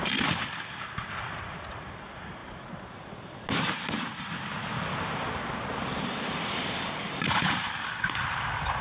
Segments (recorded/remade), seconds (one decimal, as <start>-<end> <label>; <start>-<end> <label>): 0.0-2.4 remade; 2.4-6.1 recorded; 6.1-8.8 remade